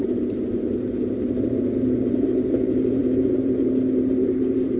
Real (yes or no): no